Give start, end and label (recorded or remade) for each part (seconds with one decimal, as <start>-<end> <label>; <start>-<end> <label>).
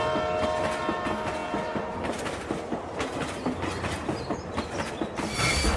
0.0-5.8 recorded